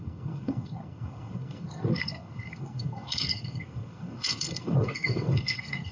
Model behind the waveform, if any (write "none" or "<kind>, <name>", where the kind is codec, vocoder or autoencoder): codec, SNAC